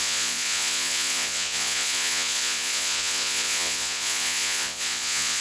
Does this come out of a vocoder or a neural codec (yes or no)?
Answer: yes